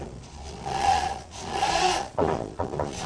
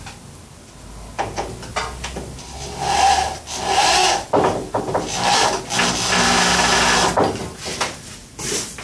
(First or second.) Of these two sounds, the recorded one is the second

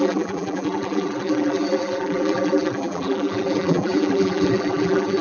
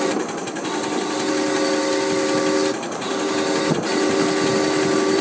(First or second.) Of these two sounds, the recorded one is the second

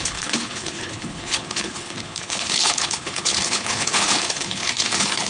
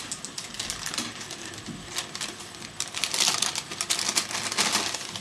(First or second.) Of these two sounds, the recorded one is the second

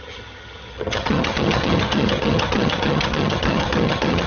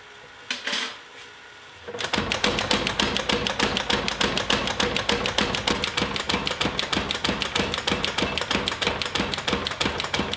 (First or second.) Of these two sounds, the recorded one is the second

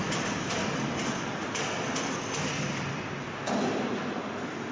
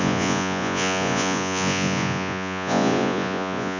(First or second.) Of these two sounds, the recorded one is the first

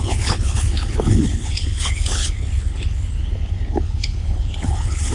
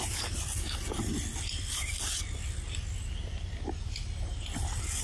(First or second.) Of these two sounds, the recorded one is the second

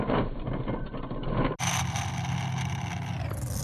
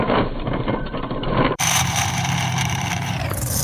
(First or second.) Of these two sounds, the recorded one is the first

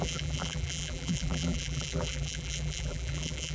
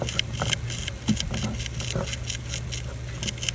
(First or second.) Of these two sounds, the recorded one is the second